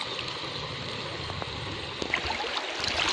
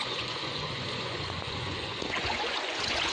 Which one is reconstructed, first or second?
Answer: second